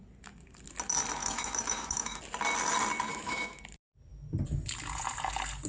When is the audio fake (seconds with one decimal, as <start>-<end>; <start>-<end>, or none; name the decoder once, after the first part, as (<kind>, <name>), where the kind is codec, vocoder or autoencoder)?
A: 1.2-2.2 (autoencoder, DAC-VAE); 3.1-3.6